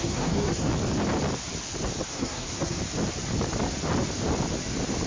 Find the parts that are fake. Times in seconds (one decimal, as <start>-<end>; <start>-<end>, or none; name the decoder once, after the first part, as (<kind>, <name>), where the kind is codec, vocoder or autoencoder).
0.0-0.7 (codec, SNAC); 2.1-2.8